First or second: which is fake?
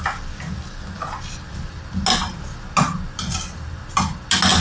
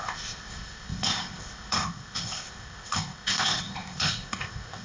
second